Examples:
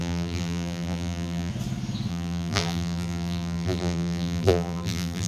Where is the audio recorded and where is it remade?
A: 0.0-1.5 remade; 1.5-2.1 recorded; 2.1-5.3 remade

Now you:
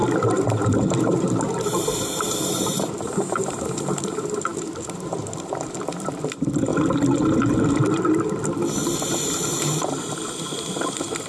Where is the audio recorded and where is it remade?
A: 0.0-6.7 remade; 6.7-9.6 recorded; 9.6-11.3 remade

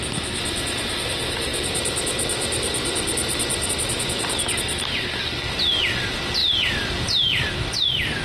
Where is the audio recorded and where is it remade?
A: 0.0-8.2 remade

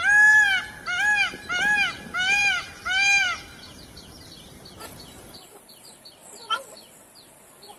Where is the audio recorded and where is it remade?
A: 0.0-2.4 recorded; 2.4-5.7 remade; 5.7-7.8 recorded

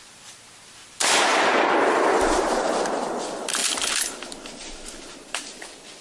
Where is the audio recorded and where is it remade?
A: 0.0-1.3 recorded; 1.3-2.6 remade; 2.6-6.0 recorded

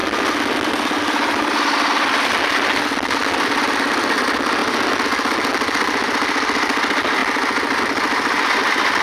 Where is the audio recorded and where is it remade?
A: 0.0-9.0 recorded

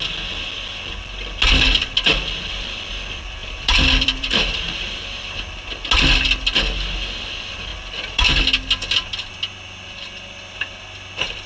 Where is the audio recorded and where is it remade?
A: 0.0-3.4 recorded; 3.4-4.9 remade; 4.9-7.7 recorded; 7.7-8.4 remade; 8.4-11.5 recorded